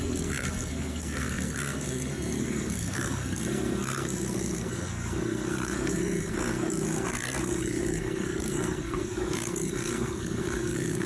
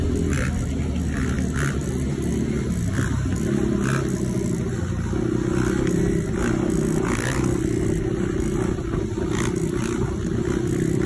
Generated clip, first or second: first